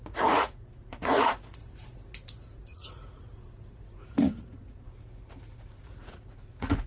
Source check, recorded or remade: remade